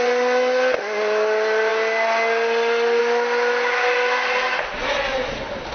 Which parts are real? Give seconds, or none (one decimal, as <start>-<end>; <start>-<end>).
0.0-5.7